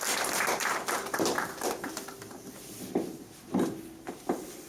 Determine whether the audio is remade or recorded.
recorded